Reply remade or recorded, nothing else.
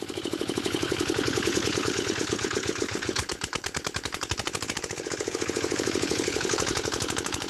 remade